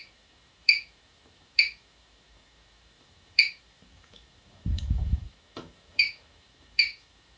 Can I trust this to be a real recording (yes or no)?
no